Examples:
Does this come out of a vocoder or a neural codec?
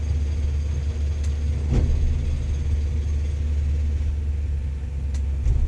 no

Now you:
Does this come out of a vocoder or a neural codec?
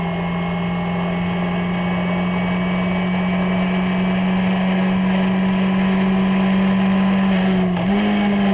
no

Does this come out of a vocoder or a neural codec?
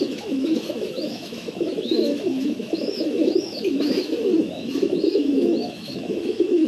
yes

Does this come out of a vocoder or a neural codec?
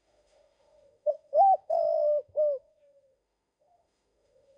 yes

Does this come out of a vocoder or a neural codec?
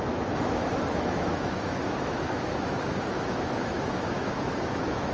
yes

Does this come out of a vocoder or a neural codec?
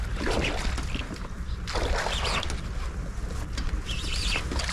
no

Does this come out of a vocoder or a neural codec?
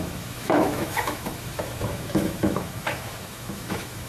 yes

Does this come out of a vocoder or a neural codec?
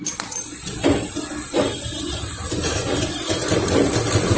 no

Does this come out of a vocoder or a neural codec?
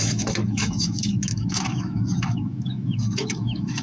yes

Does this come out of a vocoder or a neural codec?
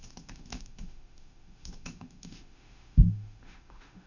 yes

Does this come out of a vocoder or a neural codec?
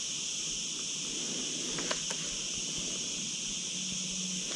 no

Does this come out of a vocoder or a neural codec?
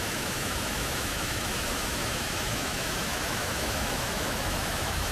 yes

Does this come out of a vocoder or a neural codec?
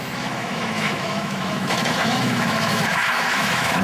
yes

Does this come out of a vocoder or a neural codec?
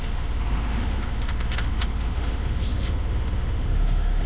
yes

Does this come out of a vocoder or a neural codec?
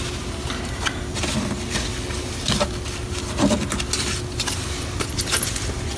no